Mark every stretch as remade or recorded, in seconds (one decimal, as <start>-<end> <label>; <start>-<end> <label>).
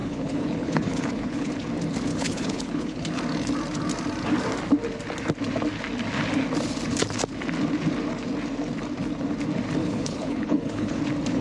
0.0-1.5 remade; 1.5-2.1 recorded; 2.1-3.2 remade; 3.2-9.8 recorded; 9.8-11.0 remade; 11.0-11.4 recorded